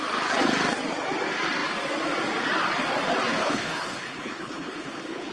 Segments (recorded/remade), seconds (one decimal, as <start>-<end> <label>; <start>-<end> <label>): 0.0-3.4 recorded; 3.4-5.3 remade